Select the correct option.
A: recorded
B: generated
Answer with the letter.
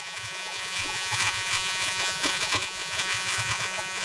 B